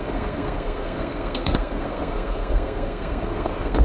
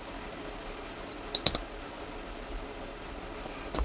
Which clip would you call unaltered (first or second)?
second